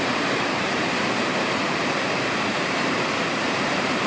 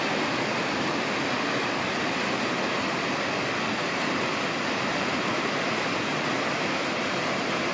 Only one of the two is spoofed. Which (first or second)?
first